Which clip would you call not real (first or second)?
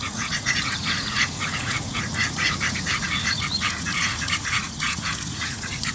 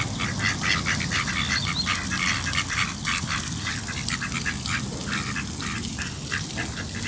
first